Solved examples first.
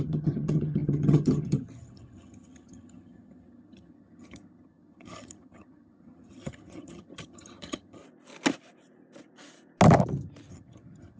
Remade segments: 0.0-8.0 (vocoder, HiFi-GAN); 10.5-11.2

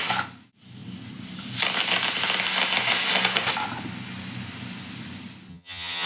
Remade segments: 5.5-6.1 (vocoder, HiFi-GAN)

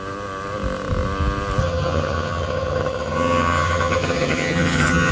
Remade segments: 1.6-5.1 (vocoder, HiFi-GAN)

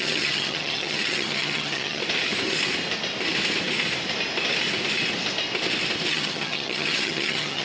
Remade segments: 0.0-2.0 (vocoder, HiFi-GAN); 6.1-7.6

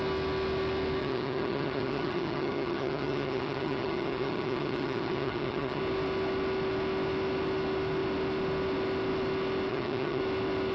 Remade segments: 1.0-5.8 (vocoder, HiFi-GAN); 9.7-10.2

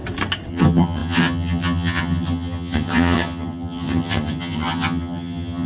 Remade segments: 0.5-5.7 (vocoder, HiFi-GAN)